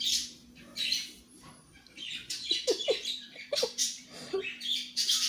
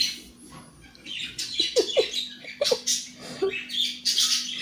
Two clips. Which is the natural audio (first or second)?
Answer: second